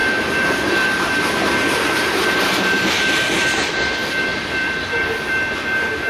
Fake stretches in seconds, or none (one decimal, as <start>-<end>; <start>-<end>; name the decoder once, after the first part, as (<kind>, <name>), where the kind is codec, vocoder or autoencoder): 0.0-3.7 (vocoder, BigVGAN v2); 4.3-5.3